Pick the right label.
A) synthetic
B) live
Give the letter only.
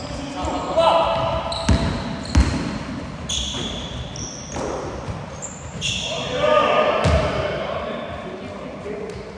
B